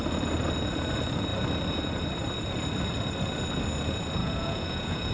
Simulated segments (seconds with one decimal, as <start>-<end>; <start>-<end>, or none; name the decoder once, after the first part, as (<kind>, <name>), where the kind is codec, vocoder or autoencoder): 4.2-5.1 (vocoder, Vocos)